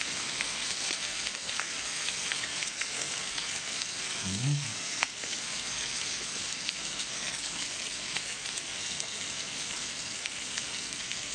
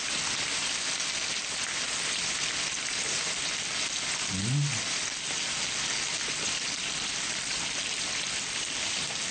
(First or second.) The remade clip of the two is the first